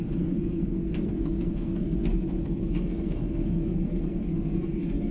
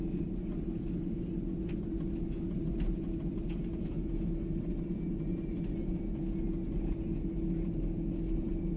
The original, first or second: second